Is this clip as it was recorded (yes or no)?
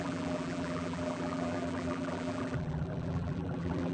no